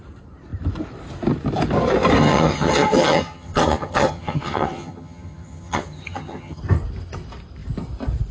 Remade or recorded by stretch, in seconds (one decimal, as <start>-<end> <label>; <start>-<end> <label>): 0.0-2.2 recorded; 2.2-6.6 remade; 6.6-8.3 recorded